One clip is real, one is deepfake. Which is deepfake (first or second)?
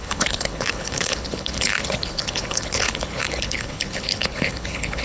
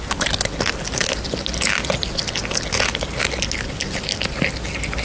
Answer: first